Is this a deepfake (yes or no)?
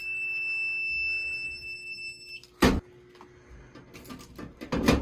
no